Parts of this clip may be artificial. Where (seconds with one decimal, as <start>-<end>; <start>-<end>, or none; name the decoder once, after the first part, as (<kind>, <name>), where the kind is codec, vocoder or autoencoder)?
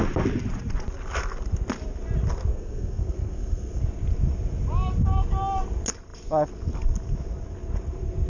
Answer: 2.5-3.8 (codec, SNAC)